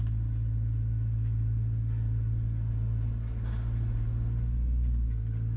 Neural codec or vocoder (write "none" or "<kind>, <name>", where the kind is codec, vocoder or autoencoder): none